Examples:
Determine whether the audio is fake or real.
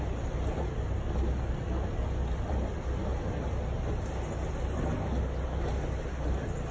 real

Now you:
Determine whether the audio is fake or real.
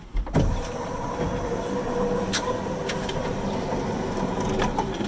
real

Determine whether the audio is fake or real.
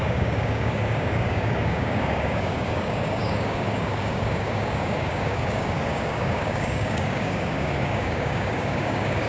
fake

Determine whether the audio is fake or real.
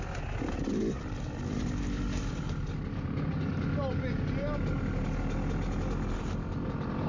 real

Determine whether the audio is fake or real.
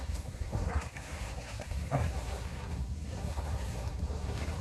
fake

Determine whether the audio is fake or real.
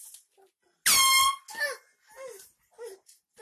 real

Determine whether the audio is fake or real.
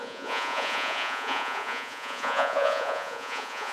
fake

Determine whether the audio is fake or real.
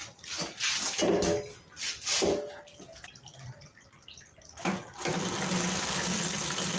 real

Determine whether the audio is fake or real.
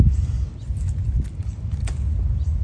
real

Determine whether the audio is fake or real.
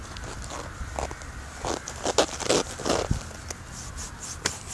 real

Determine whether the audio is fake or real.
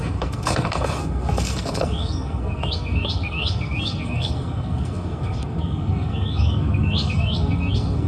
fake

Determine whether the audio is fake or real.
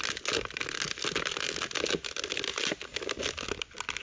real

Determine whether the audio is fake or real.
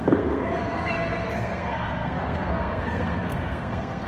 fake